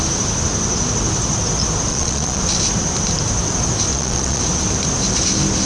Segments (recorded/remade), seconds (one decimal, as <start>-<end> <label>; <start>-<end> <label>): 0.0-1.9 recorded; 1.9-2.4 remade; 2.4-3.9 recorded; 3.9-4.4 remade; 4.4-5.7 recorded